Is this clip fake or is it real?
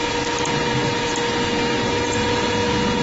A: real